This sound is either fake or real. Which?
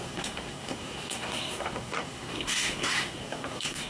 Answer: fake